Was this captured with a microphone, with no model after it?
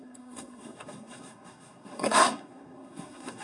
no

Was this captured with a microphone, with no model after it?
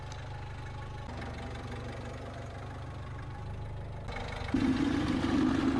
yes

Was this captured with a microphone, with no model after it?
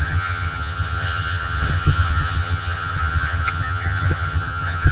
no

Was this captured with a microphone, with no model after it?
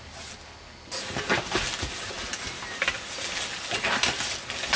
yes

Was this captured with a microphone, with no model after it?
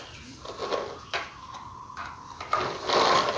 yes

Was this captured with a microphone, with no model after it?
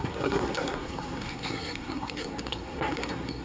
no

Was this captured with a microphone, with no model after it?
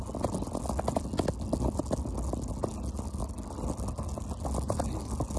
yes